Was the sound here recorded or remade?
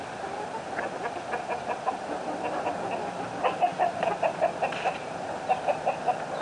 recorded